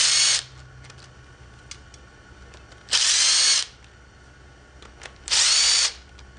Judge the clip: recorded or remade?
recorded